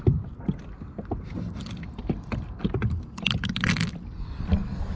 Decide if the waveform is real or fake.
real